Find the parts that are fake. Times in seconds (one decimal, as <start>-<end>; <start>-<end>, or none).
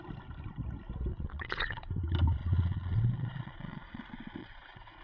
1.1-1.9; 2.4-4.0; 4.4-5.0